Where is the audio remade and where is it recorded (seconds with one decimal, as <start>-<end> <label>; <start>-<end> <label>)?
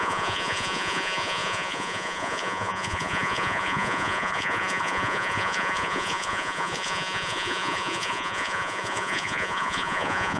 0.0-10.4 remade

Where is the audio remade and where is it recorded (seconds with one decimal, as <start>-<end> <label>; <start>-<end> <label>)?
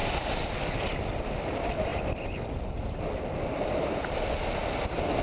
0.0-5.2 recorded